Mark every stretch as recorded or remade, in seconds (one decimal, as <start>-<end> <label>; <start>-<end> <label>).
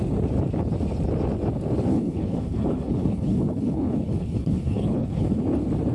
0.0-1.9 recorded; 1.9-5.4 remade; 5.4-5.9 recorded